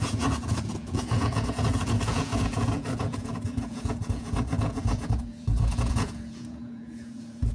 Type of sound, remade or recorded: remade